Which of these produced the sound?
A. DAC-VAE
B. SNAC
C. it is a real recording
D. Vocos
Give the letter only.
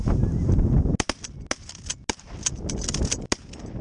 C